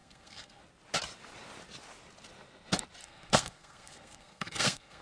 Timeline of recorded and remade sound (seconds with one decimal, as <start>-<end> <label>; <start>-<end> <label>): 0.0-0.6 remade; 0.6-3.0 recorded; 3.0-5.0 remade